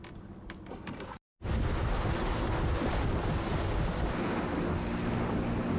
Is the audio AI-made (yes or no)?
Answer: no